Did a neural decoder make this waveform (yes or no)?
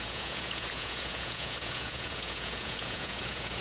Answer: yes